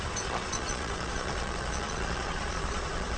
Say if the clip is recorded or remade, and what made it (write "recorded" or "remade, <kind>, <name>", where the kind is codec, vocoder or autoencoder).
remade, vocoder, Vocos